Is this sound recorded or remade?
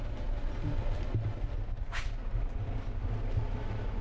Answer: recorded